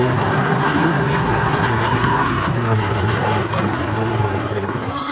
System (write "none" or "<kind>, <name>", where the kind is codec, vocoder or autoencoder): codec, SNAC